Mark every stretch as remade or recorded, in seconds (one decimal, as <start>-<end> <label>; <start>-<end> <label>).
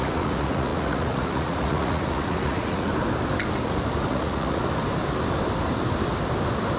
0.0-2.9 remade; 2.9-4.1 recorded; 4.1-4.6 remade; 4.6-6.8 recorded